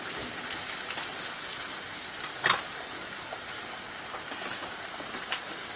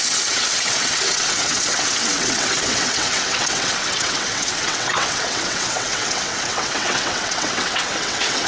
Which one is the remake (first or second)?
second